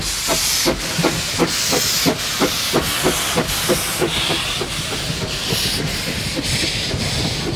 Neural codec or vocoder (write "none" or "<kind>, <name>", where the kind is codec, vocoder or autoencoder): none